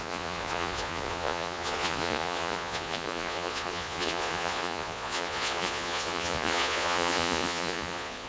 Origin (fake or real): fake